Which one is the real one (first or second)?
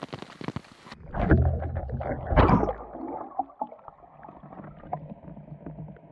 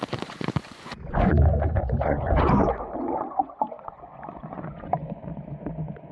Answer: first